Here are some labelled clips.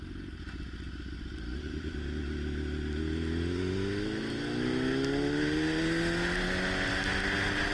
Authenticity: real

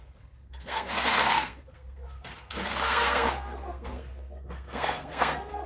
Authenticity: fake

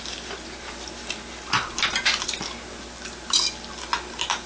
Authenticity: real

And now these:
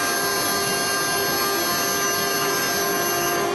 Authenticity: real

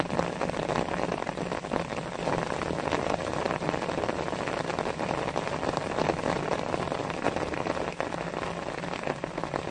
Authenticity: real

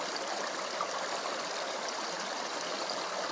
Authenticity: real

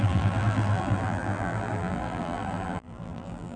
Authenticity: fake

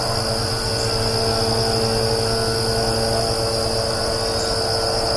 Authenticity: real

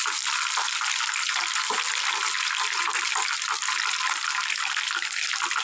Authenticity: real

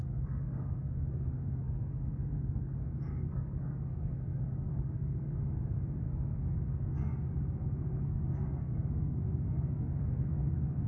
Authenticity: fake